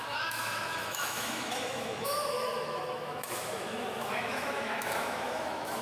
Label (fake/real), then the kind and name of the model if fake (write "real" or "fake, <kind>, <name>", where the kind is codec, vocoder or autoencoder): fake, autoencoder, DAC-VAE